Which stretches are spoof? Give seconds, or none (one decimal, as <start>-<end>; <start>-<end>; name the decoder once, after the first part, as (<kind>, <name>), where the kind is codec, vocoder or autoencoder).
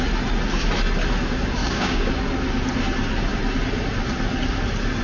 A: 1.6-2.1 (codec, DAC)